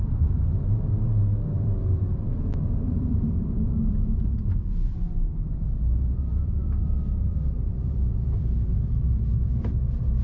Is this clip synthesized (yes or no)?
yes